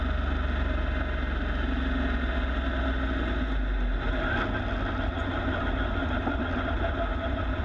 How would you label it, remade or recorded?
recorded